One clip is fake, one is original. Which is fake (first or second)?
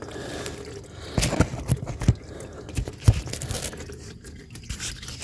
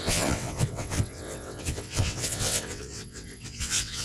second